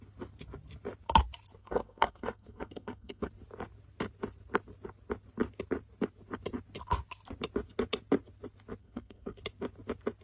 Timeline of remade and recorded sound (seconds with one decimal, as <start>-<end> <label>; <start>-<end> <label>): 0.0-1.6 recorded; 1.6-3.3 remade; 3.3-8.8 recorded; 8.8-9.4 remade; 9.4-10.2 recorded